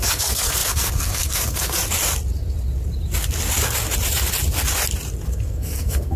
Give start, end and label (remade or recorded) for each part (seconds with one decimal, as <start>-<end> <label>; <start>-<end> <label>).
0.0-1.8 remade; 1.8-5.3 recorded; 5.3-6.2 remade